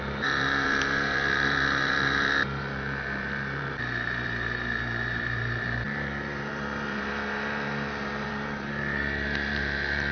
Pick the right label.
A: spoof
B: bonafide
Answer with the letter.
A